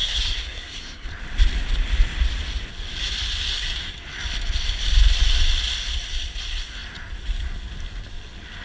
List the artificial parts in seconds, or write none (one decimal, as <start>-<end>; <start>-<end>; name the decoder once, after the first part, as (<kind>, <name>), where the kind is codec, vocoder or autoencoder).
0.0-1.1 (codec, SNAC)